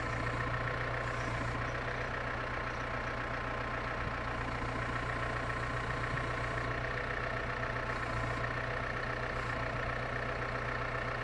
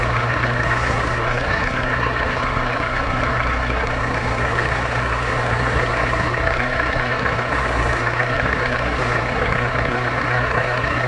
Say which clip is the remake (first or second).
second